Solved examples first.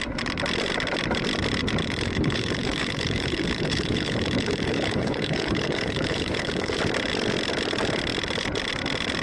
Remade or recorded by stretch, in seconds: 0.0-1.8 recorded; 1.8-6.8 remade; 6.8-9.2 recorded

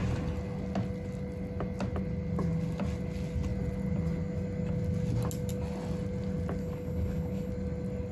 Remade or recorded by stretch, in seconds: 0.0-6.6 recorded; 6.6-7.5 remade; 7.5-8.1 recorded

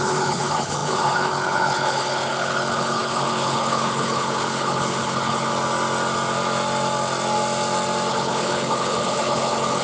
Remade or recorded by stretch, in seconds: 0.0-5.5 remade; 5.5-8.1 recorded; 8.1-9.8 remade